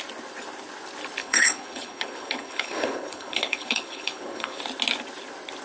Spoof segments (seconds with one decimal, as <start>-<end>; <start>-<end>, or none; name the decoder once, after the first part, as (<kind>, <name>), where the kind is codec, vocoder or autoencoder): 1.2-4.6 (codec, HILCodec)